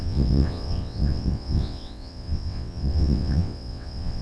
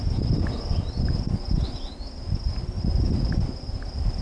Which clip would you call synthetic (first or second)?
first